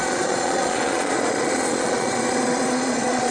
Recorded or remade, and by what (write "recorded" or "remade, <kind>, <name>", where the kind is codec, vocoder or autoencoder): remade, vocoder, Vocos